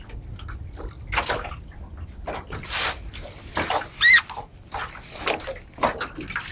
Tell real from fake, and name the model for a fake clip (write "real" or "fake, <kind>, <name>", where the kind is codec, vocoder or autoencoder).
real